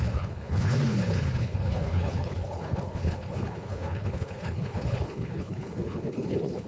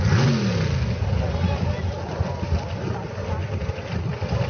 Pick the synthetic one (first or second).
first